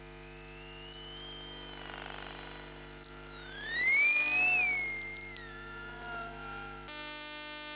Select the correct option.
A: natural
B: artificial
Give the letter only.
A